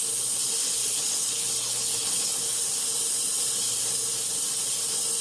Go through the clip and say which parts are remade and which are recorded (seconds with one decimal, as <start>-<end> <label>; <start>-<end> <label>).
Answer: 0.0-0.8 recorded; 0.8-2.7 remade; 2.7-5.2 recorded